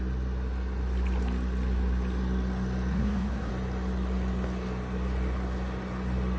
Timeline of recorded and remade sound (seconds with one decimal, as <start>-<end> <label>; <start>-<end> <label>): 0.0-2.9 recorded; 2.9-3.5 remade; 3.5-6.4 recorded